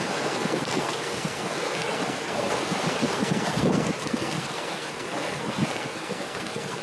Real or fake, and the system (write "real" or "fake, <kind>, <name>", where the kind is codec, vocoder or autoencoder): fake, codec, SNAC